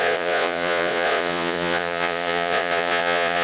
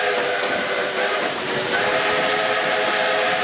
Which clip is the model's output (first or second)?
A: first